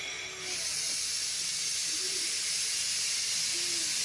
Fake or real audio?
real